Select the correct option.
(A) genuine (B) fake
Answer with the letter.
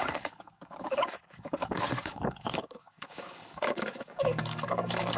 B